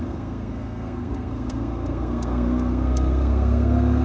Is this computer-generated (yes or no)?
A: yes